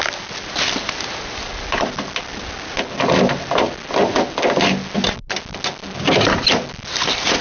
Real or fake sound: real